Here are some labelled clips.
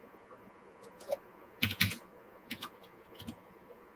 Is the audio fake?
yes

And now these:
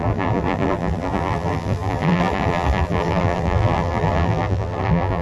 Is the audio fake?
yes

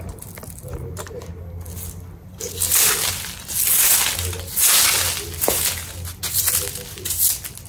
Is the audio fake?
no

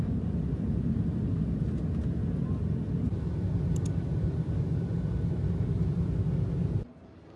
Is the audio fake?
no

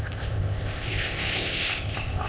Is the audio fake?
yes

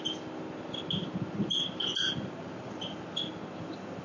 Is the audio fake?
no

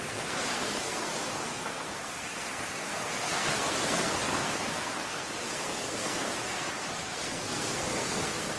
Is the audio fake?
yes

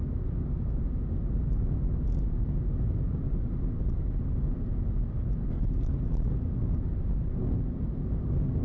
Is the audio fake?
no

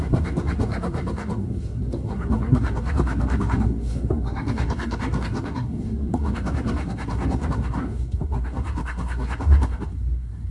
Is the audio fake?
yes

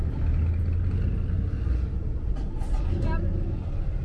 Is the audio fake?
no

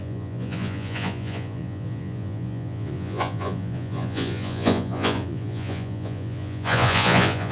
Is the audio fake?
yes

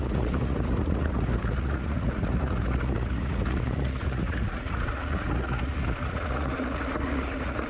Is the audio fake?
yes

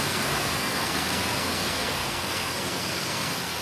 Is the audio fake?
yes